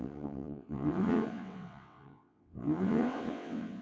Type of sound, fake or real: fake